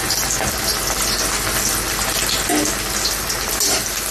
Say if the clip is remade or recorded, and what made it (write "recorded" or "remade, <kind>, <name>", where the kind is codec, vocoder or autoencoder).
recorded